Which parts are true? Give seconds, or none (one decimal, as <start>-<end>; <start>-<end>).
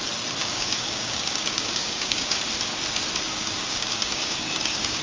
0.0-0.4; 2.4-3.3